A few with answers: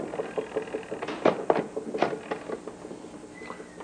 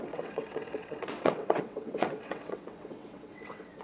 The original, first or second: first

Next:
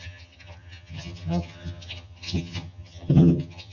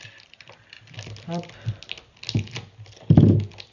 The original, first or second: second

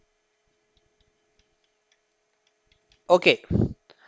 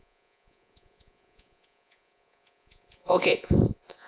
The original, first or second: first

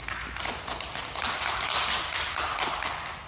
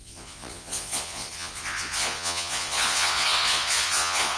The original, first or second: first